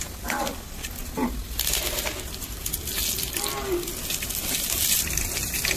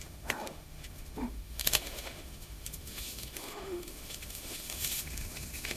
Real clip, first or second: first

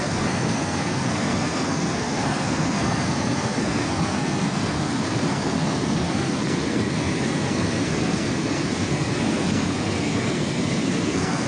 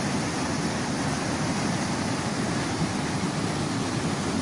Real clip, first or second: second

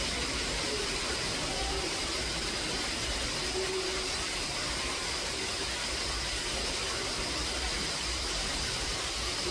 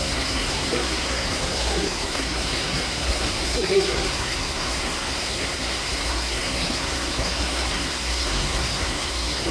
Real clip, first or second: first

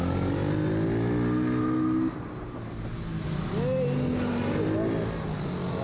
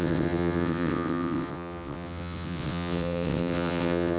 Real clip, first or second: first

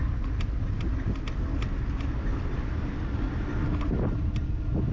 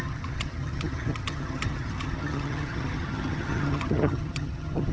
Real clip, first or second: first